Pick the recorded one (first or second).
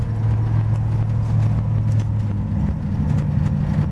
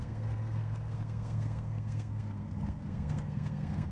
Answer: first